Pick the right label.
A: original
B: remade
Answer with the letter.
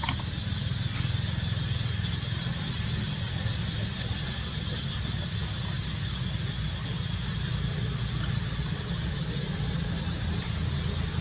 A